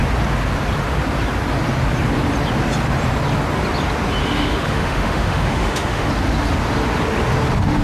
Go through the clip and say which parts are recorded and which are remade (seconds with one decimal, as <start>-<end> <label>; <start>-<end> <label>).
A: 0.0-4.2 recorded; 4.2-6.1 remade; 6.1-7.8 recorded